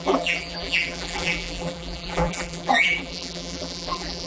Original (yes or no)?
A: no